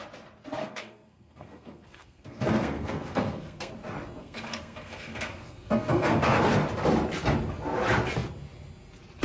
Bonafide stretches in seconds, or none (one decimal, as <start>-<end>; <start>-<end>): 0.0-0.6; 3.7-4.2; 6.5-9.2